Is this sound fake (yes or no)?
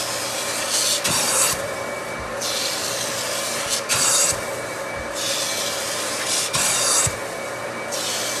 no